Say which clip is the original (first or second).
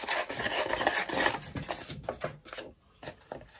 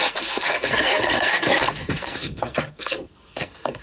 first